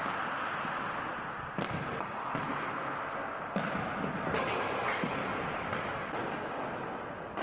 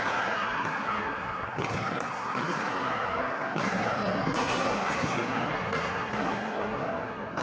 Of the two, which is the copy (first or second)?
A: second